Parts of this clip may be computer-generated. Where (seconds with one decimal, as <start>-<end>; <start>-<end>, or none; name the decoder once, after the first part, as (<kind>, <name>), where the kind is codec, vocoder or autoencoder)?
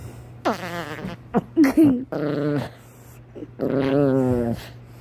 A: none